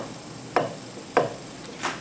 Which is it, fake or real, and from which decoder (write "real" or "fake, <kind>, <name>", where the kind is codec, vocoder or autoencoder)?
real